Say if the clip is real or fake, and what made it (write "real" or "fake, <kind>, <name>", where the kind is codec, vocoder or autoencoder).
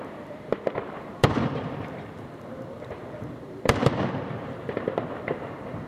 fake, vocoder, BigVGAN v2